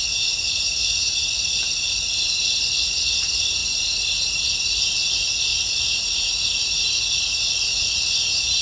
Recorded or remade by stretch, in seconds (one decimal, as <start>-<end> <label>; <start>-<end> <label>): 0.0-8.6 recorded